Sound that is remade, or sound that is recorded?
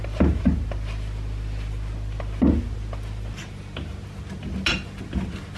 recorded